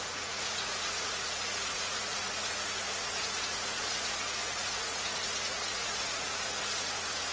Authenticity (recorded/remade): remade